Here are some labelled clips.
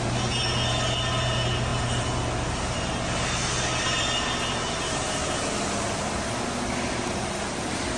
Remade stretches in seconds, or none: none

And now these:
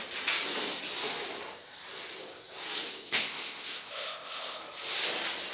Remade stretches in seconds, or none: 2.9-4.6

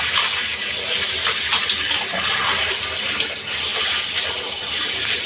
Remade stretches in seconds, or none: none

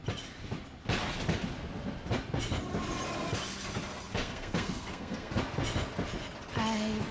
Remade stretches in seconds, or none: 4.1-5.4

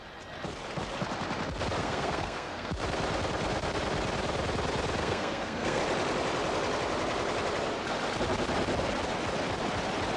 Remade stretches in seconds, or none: 1.8-2.7; 5.0-5.8

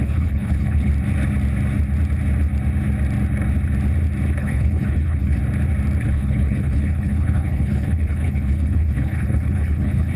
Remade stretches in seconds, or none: 0.0-0.9; 4.4-5.4; 6.0-10.2